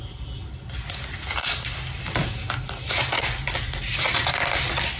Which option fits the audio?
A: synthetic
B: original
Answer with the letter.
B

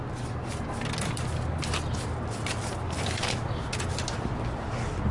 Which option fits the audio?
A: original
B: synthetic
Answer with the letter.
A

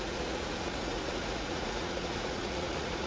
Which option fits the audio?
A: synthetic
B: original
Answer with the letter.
A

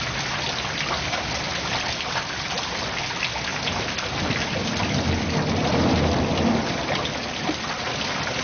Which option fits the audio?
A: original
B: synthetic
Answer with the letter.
A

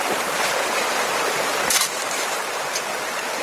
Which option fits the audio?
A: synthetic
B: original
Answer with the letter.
A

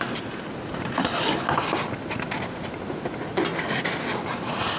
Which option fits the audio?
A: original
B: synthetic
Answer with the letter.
A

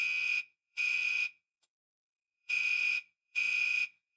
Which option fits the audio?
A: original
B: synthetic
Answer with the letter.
B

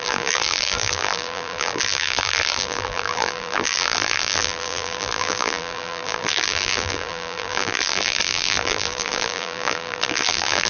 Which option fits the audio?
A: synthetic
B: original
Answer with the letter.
A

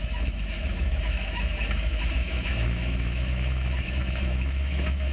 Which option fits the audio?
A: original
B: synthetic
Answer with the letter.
B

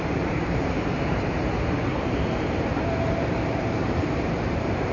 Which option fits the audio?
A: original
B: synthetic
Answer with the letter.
B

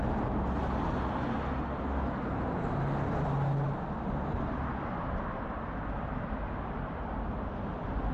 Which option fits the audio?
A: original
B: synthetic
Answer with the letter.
A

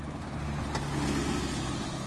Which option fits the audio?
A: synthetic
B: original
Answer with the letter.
B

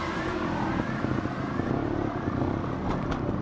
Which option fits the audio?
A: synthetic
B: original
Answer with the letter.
B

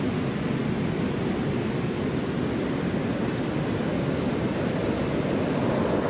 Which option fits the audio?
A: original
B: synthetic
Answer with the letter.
A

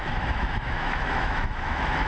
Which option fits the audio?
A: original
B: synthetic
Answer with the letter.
B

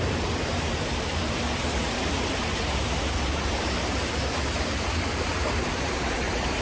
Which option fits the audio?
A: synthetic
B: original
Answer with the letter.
A